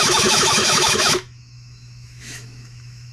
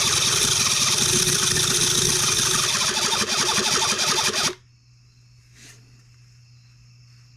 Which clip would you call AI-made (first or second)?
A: first